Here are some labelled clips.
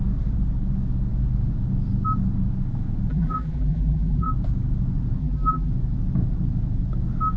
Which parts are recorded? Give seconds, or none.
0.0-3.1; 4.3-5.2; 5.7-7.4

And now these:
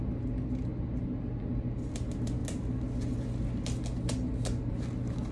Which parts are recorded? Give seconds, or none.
0.0-5.3

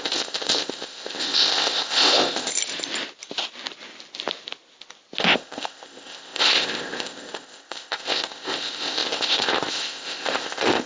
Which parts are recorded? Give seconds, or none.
2.5-5.2